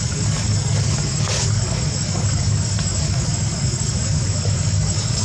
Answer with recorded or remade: remade